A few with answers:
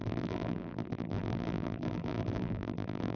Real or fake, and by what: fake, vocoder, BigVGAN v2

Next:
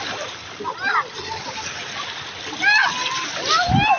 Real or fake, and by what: real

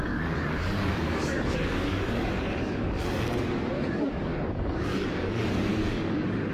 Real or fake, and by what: fake, codec, DAC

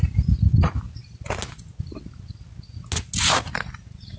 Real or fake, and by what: real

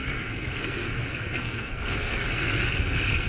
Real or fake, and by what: fake, codec, SNAC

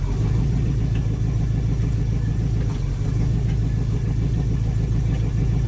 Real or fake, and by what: real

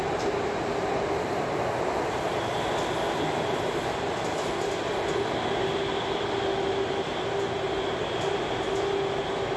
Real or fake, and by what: real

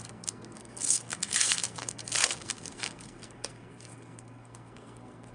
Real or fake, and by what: fake, codec, SNAC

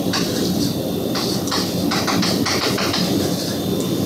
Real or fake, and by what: real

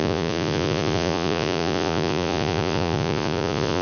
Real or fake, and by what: fake, vocoder, Vocos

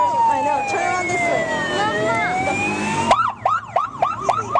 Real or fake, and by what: real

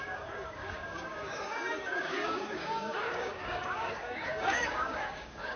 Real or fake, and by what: fake, codec, DAC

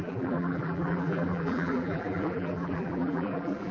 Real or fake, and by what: fake, vocoder, BigVGAN v2